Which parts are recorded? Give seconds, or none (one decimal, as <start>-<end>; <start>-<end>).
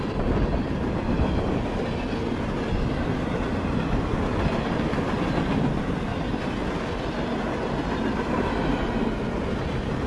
0.0-10.1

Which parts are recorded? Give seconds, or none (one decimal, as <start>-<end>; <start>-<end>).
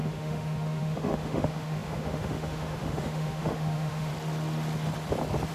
4.1-5.5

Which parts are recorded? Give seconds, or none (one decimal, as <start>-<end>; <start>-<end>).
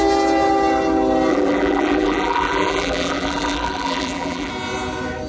0.0-1.3; 4.5-5.3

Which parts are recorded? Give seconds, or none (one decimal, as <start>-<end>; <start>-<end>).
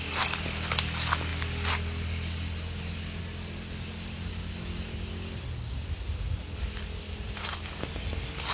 0.0-4.3; 4.9-8.5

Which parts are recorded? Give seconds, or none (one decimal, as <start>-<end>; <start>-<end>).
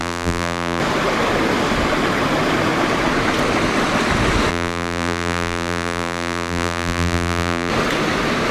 0.8-4.5; 7.7-8.5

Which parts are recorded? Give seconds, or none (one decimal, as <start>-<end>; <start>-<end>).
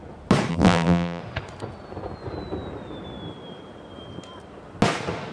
0.0-0.5; 1.2-5.3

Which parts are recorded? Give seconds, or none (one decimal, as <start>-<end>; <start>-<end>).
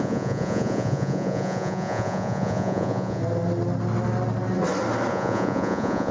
3.2-5.1